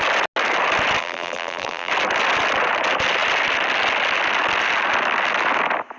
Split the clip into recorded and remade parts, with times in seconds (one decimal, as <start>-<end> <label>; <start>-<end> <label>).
0.0-1.0 recorded; 1.0-1.9 remade; 1.9-6.0 recorded